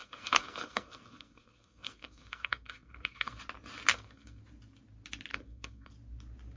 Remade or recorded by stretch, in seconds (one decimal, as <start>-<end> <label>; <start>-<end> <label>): 0.0-3.4 remade; 3.4-3.9 recorded; 3.9-4.4 remade; 4.4-5.3 recorded; 5.3-5.9 remade; 5.9-6.6 recorded